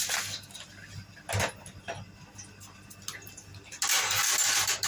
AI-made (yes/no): no